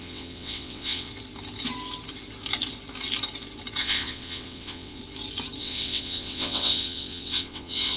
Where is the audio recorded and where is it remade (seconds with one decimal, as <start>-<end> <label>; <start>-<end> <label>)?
0.0-1.1 remade; 1.1-3.8 recorded; 3.8-5.0 remade; 5.0-5.6 recorded; 5.6-8.0 remade